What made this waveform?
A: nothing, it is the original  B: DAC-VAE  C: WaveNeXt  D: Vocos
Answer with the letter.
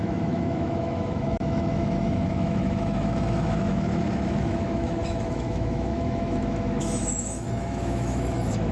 B